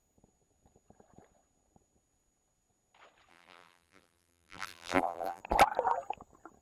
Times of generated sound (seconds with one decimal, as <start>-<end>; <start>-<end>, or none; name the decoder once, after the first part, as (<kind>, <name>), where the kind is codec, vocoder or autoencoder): 3.3-5.4 (vocoder, BigVGAN v2)